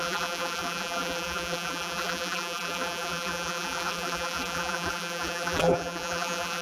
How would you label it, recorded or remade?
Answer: remade